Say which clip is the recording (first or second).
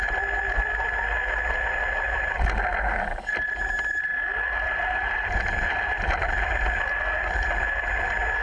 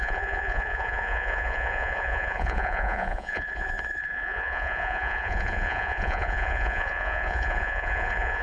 first